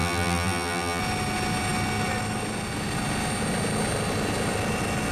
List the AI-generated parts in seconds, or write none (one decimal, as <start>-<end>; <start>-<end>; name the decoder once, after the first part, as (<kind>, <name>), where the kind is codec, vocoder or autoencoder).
0.0-1.0 (vocoder, BigVGAN v2)